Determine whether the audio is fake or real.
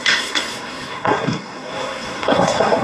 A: fake